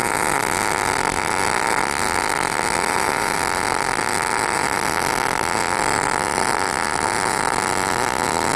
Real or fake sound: real